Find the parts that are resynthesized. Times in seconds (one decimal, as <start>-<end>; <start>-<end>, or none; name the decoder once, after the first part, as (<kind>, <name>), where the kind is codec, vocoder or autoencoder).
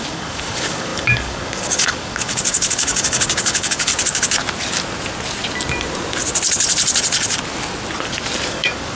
0.0-3.9 (codec, DAC); 8.5-9.0